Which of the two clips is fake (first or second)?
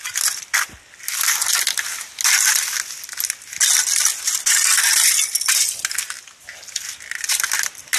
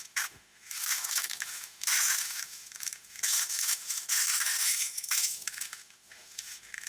second